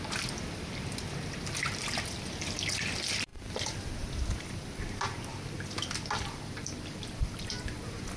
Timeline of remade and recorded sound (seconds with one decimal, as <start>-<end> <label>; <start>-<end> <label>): 0.0-3.3 recorded; 3.3-8.2 remade